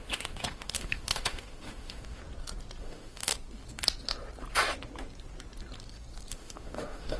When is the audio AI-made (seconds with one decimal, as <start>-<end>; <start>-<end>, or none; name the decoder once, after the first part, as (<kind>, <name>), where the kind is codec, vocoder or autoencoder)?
0.0-2.2 (autoencoder, DAC-VAE); 2.8-3.3; 6.3-7.2